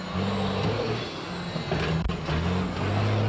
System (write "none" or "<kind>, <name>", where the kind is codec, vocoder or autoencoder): none